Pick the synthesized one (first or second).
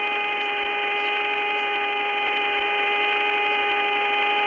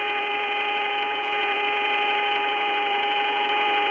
second